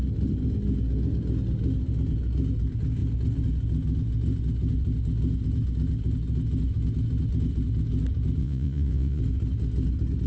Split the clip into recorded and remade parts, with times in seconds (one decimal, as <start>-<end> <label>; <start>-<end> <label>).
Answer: 0.0-8.4 recorded; 8.4-9.2 remade; 9.2-10.3 recorded